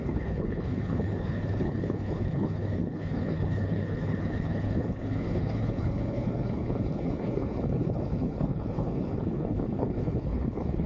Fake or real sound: fake